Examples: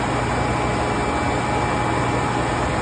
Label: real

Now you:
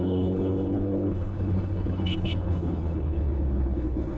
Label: fake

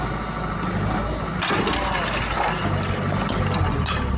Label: real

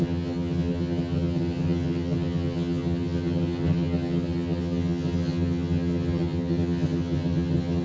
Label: fake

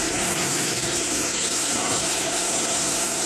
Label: fake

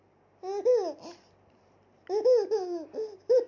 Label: real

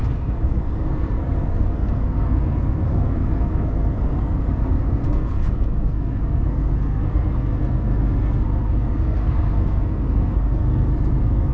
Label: fake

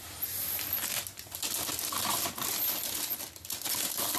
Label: real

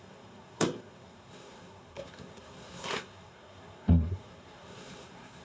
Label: fake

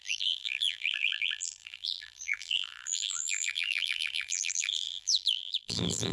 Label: fake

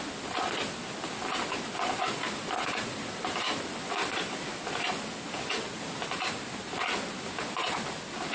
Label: real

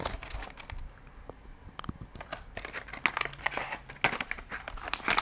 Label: real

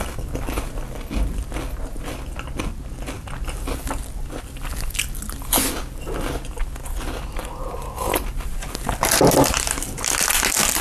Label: real